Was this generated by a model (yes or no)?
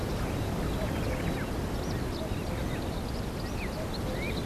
no